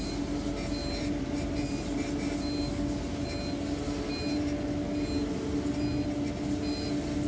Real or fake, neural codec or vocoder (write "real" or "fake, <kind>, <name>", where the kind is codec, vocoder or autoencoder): real